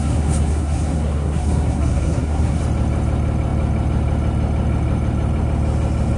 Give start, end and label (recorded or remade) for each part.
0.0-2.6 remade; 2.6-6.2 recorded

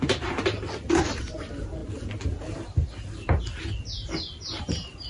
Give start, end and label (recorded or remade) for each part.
0.0-5.1 recorded

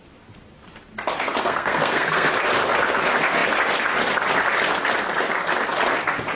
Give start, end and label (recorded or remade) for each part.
0.0-1.4 recorded; 1.4-2.3 remade; 2.3-6.4 recorded

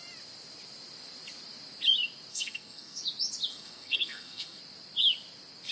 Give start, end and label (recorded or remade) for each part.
0.0-2.3 recorded; 2.3-3.0 remade; 3.0-3.5 recorded; 3.5-4.6 remade; 4.6-5.7 recorded

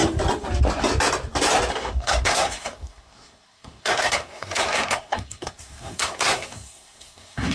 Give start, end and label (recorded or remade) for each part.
0.0-1.7 recorded; 1.7-7.5 remade

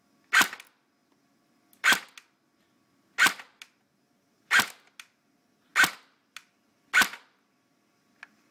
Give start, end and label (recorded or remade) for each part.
0.0-8.5 recorded